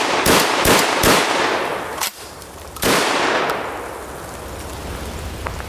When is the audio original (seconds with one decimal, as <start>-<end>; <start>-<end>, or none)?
0.0-1.9; 3.4-5.7